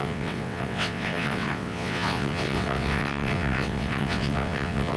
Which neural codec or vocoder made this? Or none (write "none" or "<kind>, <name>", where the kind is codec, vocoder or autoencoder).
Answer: vocoder, WaveNeXt